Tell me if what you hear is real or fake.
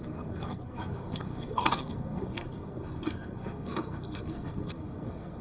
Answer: fake